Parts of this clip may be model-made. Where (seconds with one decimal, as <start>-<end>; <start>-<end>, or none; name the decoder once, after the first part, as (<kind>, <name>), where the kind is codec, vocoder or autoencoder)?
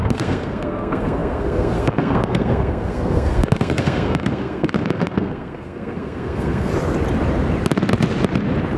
0.0-6.7 (codec, SNAC)